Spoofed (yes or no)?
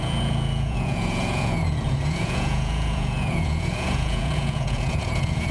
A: yes